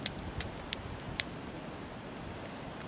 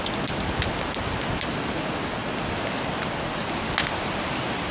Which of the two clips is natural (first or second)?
second